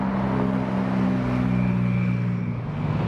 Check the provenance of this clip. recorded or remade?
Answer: recorded